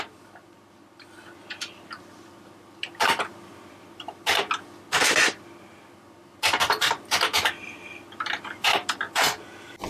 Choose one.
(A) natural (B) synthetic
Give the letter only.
A